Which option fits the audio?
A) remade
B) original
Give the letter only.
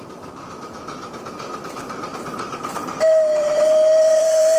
A